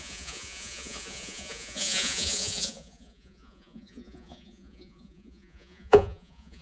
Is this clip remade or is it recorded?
remade